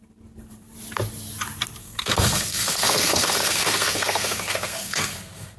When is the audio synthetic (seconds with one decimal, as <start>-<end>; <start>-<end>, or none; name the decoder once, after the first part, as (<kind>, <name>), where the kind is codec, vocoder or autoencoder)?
1.8-5.6 (codec, SNAC)

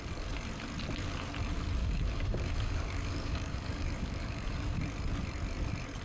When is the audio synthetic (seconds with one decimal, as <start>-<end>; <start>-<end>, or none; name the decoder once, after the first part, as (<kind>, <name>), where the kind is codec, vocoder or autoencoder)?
1.8-4.7 (codec, DAC)

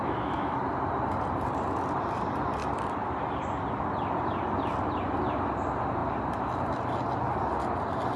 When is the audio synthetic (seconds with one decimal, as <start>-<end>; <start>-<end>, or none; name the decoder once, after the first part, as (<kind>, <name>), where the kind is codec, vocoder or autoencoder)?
0.0-0.6 (autoencoder, DAC-VAE)